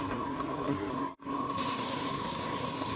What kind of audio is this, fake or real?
fake